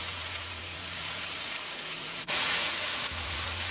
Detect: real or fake fake